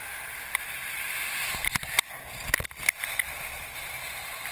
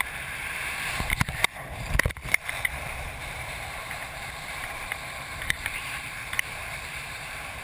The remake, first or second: second